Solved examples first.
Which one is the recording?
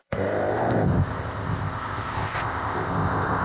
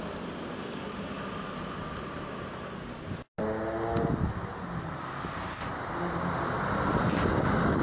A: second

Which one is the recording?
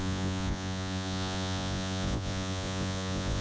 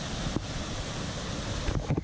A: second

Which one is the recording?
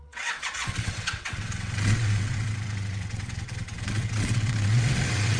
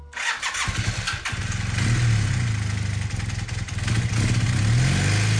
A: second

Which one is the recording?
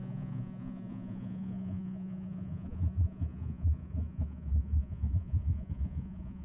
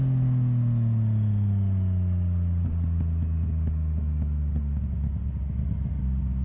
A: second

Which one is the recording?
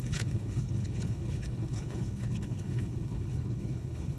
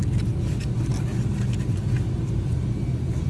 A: second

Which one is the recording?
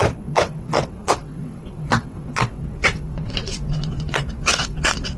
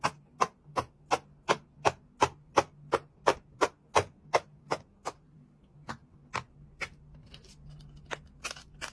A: second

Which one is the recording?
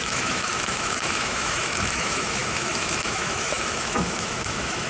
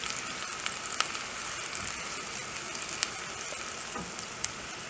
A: second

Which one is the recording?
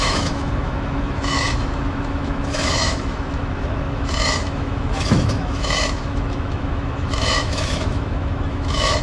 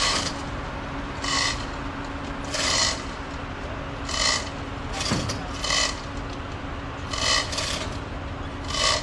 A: second